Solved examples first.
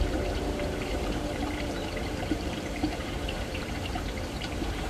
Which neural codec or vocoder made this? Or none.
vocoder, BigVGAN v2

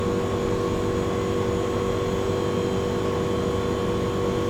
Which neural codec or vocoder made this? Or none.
none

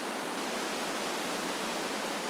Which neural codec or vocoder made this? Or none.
none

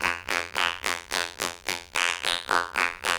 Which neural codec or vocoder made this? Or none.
vocoder, BigVGAN v2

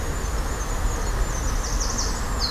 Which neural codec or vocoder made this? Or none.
none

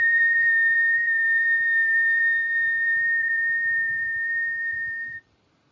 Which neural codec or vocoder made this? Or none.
vocoder, BigVGAN v2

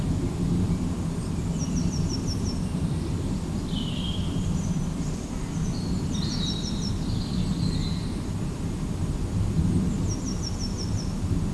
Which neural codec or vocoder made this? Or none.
vocoder, BigVGAN v2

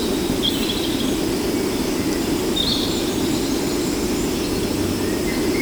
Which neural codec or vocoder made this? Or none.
none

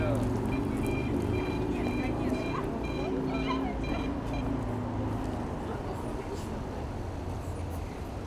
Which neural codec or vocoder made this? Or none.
none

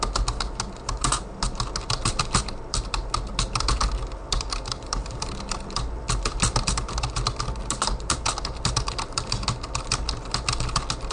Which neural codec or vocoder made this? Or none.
none